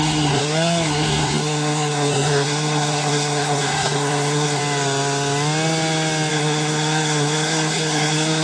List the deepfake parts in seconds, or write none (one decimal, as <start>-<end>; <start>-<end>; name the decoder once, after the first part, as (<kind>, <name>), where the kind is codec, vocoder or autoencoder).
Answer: 0.0-4.6 (codec, SNAC); 6.3-8.4